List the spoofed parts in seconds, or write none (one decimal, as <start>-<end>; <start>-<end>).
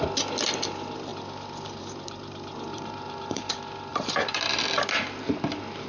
2.7-3.5; 3.9-4.6